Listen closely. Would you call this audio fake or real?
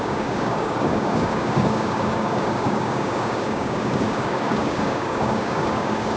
fake